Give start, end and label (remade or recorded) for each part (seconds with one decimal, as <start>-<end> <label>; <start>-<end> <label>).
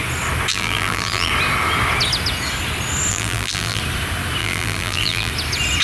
0.0-0.5 recorded; 0.5-1.3 remade; 1.3-3.1 recorded; 3.1-3.8 remade; 3.8-4.4 recorded; 4.4-5.3 remade; 5.3-5.8 recorded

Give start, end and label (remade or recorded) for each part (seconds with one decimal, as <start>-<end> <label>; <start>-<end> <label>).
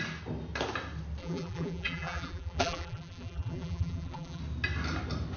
0.0-1.2 recorded; 1.2-4.4 remade; 4.4-5.4 recorded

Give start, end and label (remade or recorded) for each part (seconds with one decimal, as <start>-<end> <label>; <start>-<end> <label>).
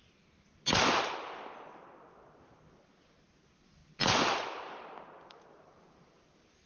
0.0-6.7 recorded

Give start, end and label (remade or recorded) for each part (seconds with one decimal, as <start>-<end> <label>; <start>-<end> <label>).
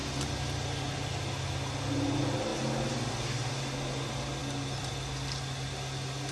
0.0-0.8 recorded; 0.8-2.5 remade; 2.5-3.1 recorded; 3.1-6.3 remade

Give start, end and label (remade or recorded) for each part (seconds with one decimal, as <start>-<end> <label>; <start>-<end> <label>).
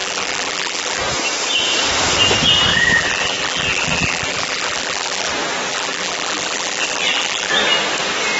0.0-1.0 remade; 1.0-2.7 recorded; 2.7-5.3 remade; 5.3-5.7 recorded; 5.7-7.5 remade; 7.5-8.4 recorded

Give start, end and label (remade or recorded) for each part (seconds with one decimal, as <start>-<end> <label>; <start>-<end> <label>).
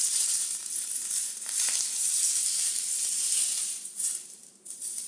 0.0-5.1 remade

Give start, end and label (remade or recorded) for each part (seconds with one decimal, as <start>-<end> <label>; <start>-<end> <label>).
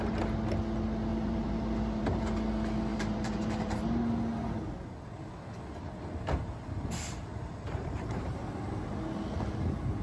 0.0-1.1 recorded; 1.1-2.2 remade; 2.2-2.9 recorded; 2.9-3.9 remade; 3.9-7.3 recorded; 7.3-8.4 remade; 8.4-10.0 recorded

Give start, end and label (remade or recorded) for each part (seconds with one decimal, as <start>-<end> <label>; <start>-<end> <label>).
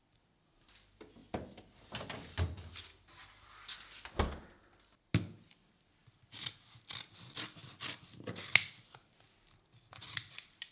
0.0-10.7 recorded